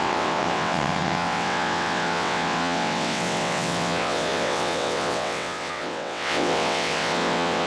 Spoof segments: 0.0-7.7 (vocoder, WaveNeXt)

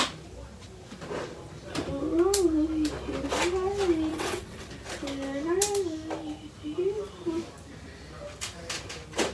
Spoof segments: 4.1-4.7 (vocoder, WaveNeXt)

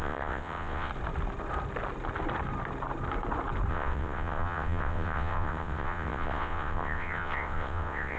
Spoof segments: 0.0-0.9 (vocoder, WaveNeXt); 3.7-8.2

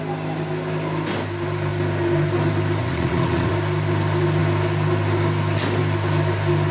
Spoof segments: 2.8-3.5 (vocoder, WaveNeXt)